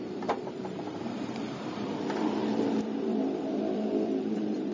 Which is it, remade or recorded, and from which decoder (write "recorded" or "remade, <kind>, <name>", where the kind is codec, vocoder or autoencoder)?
remade, vocoder, BigVGAN v2